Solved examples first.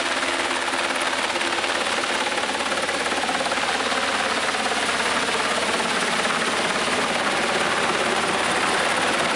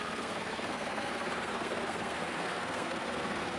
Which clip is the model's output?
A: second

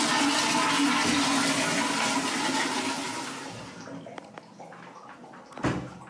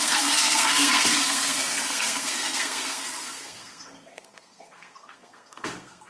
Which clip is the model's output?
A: second